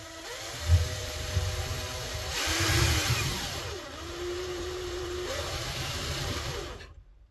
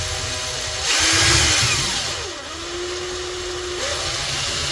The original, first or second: second